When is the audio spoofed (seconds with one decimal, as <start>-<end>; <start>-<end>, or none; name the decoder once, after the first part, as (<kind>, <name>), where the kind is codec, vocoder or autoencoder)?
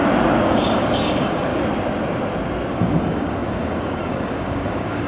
0.5-1.5 (codec, DAC); 2.7-5.1